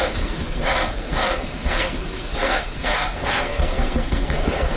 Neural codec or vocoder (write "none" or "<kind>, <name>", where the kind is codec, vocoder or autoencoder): codec, SNAC